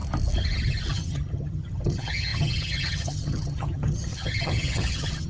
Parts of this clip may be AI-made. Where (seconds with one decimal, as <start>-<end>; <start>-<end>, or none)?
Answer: 0.9-5.3